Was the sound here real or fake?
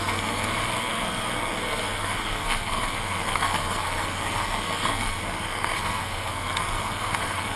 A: fake